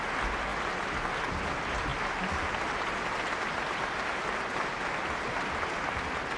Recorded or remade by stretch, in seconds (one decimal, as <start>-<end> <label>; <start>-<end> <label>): 0.0-6.4 recorded